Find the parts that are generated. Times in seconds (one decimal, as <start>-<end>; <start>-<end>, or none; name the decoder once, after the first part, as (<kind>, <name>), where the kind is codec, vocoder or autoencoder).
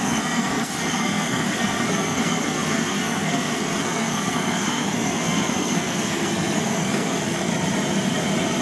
0.0-7.5 (codec, SNAC)